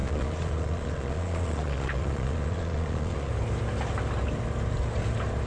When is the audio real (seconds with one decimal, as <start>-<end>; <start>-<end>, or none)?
3.3-5.5